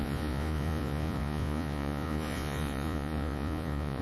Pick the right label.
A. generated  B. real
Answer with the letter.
A